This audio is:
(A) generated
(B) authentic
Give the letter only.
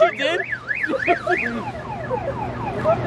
B